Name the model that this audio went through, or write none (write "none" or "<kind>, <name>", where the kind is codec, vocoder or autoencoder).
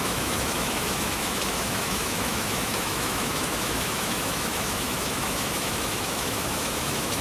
autoencoder, DAC-VAE